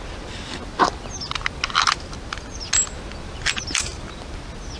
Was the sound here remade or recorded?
recorded